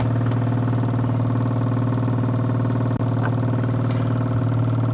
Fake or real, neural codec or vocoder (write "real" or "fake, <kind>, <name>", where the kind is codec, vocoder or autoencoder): real